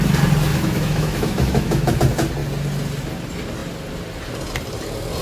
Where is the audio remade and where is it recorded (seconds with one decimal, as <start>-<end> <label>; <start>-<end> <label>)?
0.0-0.5 recorded; 0.5-2.0 remade; 2.0-5.2 recorded